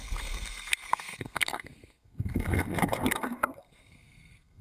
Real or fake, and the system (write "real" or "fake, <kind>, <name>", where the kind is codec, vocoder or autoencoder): fake, codec, SNAC